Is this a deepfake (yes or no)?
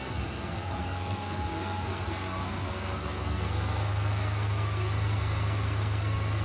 yes